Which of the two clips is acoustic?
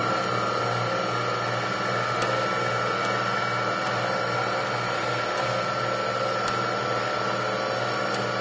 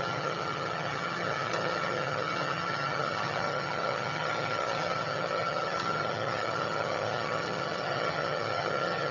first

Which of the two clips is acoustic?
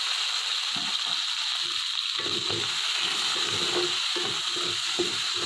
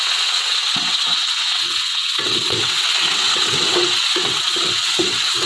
first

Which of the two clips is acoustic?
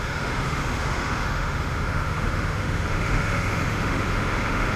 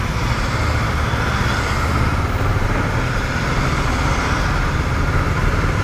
second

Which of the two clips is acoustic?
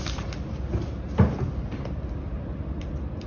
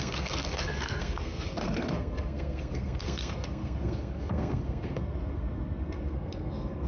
first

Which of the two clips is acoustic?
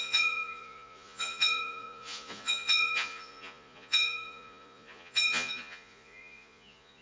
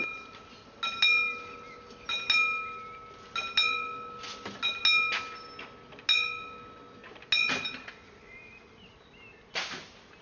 second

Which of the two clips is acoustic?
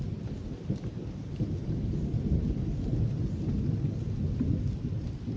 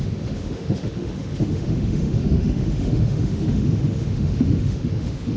first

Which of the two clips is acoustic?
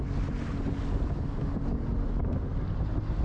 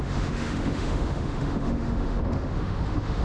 first